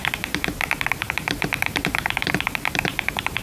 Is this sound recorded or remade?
remade